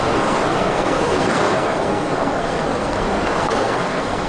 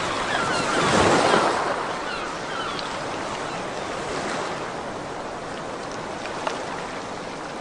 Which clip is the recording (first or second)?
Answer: second